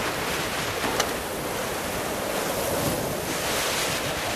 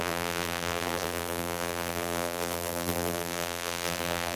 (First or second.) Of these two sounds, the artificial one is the second